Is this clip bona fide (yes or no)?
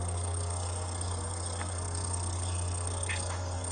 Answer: no